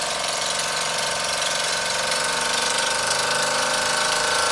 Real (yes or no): no